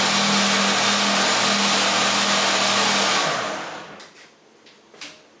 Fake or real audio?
real